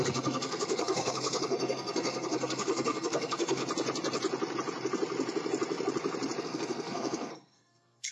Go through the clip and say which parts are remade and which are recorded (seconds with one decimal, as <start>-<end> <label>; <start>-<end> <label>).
0.0-3.6 remade; 3.6-6.4 recorded; 6.4-8.1 remade